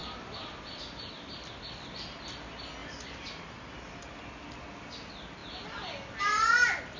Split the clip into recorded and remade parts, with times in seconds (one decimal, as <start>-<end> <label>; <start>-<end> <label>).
0.0-1.1 remade; 1.1-7.0 recorded